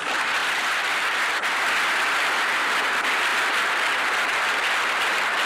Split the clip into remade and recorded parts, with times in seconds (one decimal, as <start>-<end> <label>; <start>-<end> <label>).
0.0-0.4 recorded; 0.4-1.6 remade; 1.6-5.5 recorded